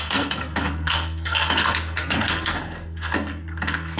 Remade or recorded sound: remade